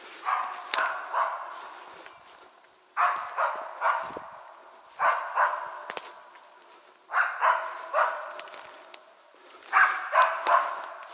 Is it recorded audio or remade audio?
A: recorded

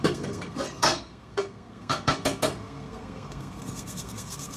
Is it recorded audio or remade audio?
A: remade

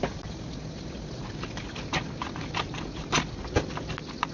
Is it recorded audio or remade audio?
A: recorded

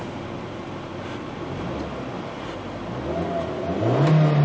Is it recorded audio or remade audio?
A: recorded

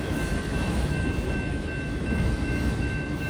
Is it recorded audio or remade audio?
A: remade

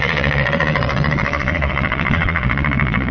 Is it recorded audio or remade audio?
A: remade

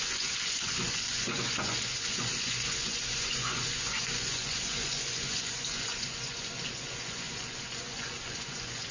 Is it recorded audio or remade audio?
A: remade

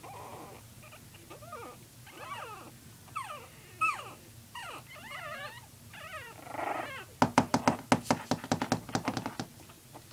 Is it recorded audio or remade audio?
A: recorded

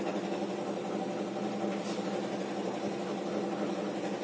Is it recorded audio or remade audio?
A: recorded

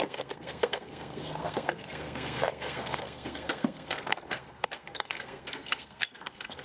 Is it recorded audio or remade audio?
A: remade